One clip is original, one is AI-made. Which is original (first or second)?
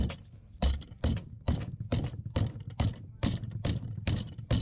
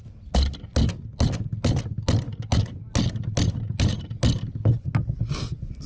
second